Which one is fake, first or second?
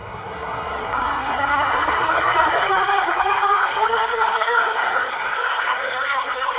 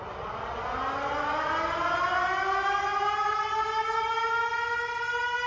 first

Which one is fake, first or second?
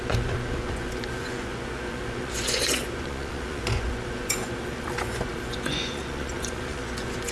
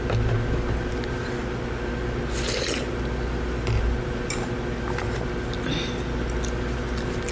first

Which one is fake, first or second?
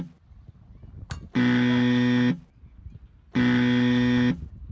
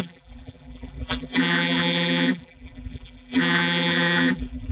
second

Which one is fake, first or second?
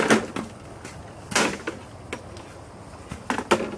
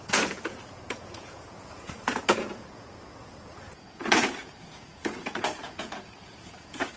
second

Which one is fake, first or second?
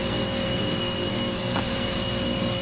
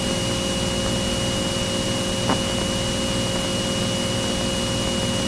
first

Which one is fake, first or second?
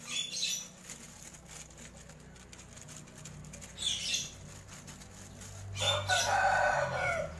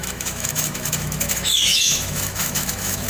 second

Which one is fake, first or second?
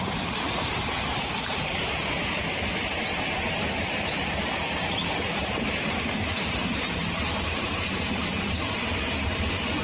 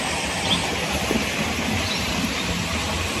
first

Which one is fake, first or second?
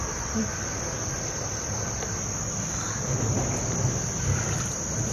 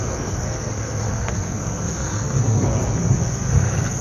second